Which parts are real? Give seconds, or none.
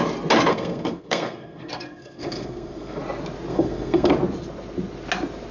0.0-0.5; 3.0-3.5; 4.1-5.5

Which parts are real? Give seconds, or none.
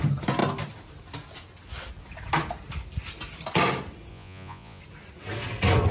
0.0-4.1; 4.8-5.9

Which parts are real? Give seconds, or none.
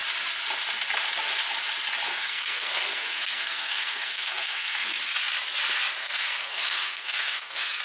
0.0-2.1; 5.0-6.0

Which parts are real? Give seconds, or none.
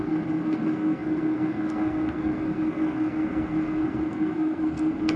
none